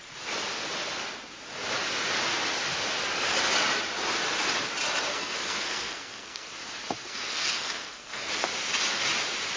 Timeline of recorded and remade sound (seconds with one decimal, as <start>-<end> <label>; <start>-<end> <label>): 0.0-5.1 recorded; 5.1-6.5 remade; 6.5-7.0 recorded; 7.0-8.3 remade; 8.3-9.6 recorded

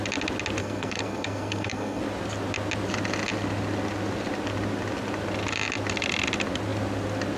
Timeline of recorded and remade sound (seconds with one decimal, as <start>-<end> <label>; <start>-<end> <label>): 0.0-0.6 recorded; 0.6-2.0 remade; 2.0-7.4 recorded

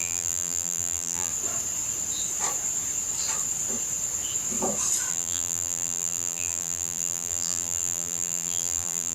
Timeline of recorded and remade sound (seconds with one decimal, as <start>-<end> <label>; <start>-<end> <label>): 0.0-1.3 remade; 1.3-5.1 recorded; 5.1-9.1 remade

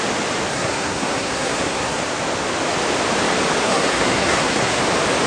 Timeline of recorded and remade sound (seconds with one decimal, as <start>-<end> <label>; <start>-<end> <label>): 0.0-0.5 recorded; 0.5-2.0 remade; 2.0-3.6 recorded; 3.6-4.8 remade; 4.8-5.3 recorded

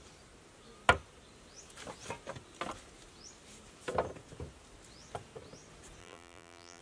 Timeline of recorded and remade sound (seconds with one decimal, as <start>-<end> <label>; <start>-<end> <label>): 0.0-6.0 recorded; 6.0-6.8 remade

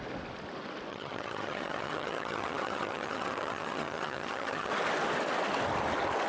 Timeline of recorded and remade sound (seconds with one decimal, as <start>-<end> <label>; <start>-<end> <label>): 0.0-0.9 recorded; 0.9-4.7 remade; 4.7-6.3 recorded